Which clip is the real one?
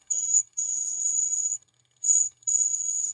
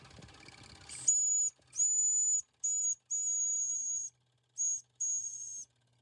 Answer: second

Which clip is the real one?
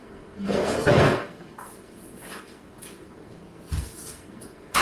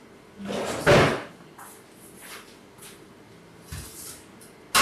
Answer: second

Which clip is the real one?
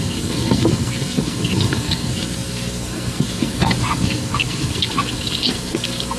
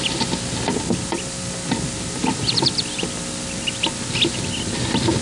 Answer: second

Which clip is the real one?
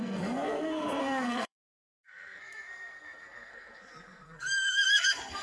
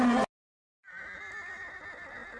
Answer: second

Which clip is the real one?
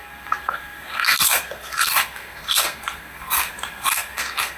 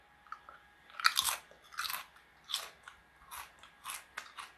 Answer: second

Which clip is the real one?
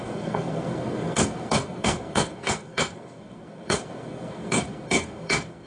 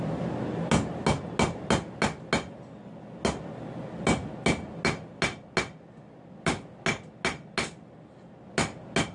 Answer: second